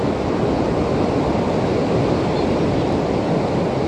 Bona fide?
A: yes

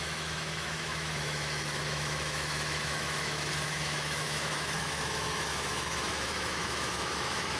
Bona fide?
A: no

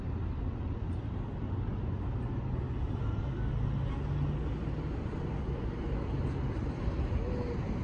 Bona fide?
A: yes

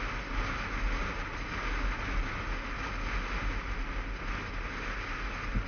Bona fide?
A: yes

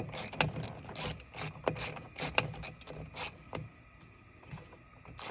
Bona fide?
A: yes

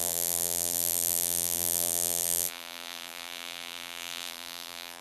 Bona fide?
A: no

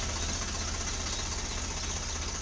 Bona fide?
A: yes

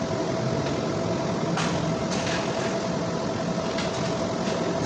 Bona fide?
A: yes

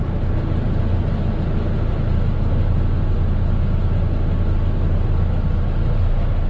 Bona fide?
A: yes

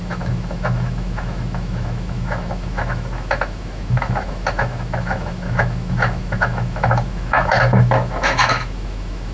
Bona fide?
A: no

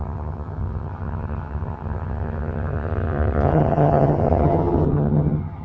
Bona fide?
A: no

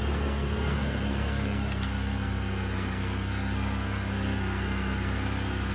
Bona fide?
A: no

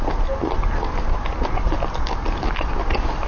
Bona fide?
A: yes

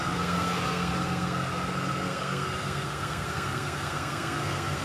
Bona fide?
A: no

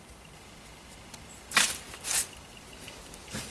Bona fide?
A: yes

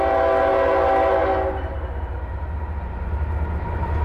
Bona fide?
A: yes